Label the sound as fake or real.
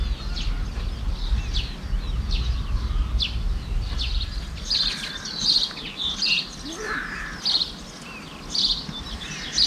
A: real